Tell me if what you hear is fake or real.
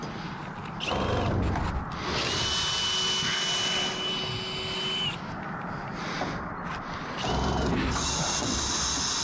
real